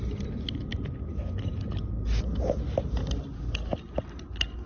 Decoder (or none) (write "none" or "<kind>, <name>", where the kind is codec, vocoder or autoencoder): none